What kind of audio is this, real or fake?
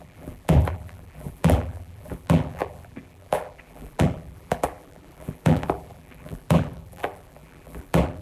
fake